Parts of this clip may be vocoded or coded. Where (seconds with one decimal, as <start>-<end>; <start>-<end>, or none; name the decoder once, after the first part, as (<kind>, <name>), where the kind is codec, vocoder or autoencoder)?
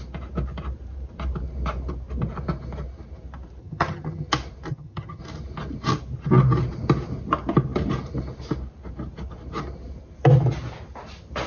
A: 3.6-4.3 (vocoder, HiFi-GAN); 4.7-5.2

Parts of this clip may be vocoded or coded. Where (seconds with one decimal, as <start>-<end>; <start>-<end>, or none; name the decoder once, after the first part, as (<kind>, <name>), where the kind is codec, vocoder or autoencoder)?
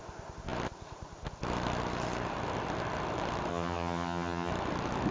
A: 3.5-4.5 (vocoder, HiFi-GAN)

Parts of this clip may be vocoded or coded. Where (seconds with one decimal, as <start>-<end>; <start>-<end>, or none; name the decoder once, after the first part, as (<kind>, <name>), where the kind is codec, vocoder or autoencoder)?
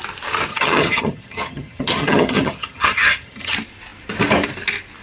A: 0.5-3.5 (vocoder, HiFi-GAN)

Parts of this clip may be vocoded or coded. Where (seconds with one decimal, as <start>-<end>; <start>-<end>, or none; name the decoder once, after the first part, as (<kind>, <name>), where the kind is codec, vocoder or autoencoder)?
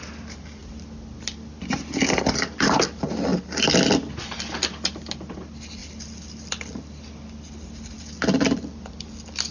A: none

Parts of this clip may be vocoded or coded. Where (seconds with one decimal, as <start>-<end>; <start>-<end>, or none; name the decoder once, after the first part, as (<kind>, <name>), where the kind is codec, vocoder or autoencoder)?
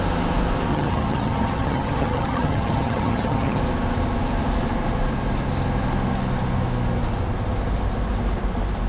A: 0.7-3.6 (vocoder, HiFi-GAN)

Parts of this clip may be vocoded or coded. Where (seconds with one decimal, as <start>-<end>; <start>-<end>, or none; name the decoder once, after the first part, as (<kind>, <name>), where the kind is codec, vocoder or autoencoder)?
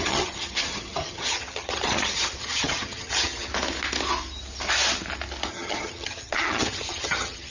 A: 0.0-3.5 (vocoder, HiFi-GAN); 5.5-7.5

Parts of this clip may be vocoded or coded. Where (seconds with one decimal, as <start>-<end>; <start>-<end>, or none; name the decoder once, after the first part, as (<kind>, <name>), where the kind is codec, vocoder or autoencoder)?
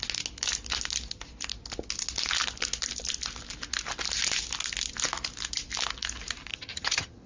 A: 6.5-7.3 (vocoder, HiFi-GAN)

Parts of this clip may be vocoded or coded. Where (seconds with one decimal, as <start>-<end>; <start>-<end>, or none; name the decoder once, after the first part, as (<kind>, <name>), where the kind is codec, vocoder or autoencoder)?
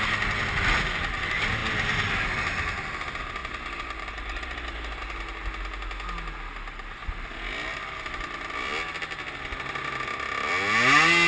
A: none